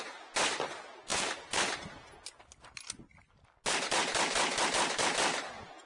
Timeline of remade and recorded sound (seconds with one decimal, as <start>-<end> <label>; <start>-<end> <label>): 0.0-5.9 recorded